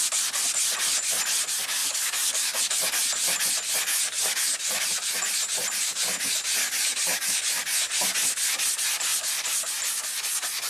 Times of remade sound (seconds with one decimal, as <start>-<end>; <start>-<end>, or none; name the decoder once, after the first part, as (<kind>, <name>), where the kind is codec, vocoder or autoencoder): 1.8-2.6 (codec, DAC); 3.9-4.8; 6.6-7.4